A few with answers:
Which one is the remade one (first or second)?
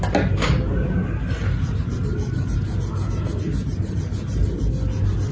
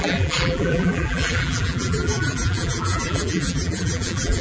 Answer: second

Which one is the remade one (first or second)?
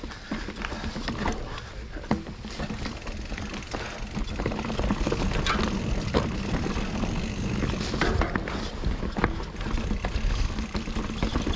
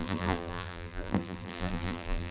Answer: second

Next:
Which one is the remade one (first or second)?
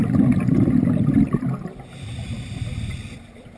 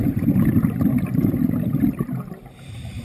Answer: second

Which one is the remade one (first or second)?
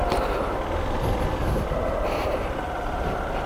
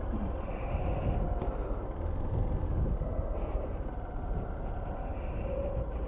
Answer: first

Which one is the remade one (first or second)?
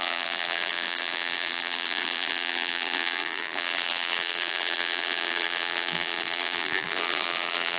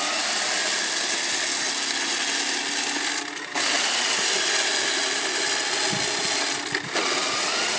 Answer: first